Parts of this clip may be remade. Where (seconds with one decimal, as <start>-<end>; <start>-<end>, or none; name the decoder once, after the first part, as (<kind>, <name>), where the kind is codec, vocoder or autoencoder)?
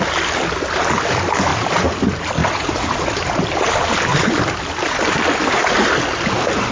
2.4-3.1 (vocoder, Vocos)